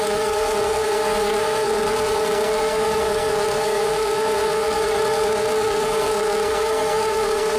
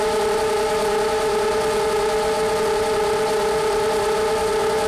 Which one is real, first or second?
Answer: second